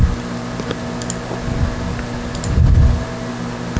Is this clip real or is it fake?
real